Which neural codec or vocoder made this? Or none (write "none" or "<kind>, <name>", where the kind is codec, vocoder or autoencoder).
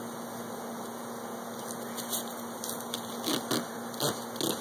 none